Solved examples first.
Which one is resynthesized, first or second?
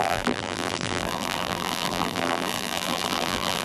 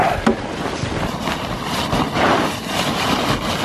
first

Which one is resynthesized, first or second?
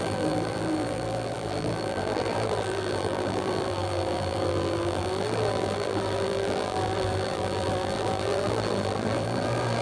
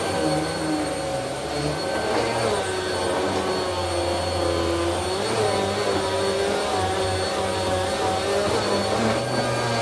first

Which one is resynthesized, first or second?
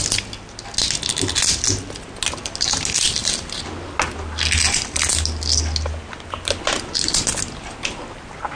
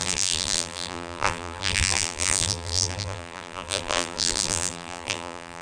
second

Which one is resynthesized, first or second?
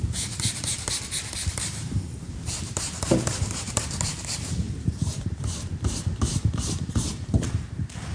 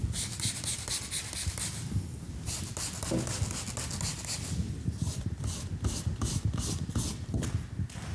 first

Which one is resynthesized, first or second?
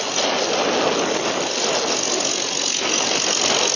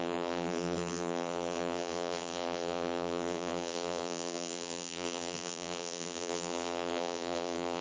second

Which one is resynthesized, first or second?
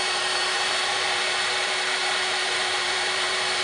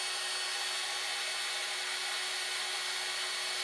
first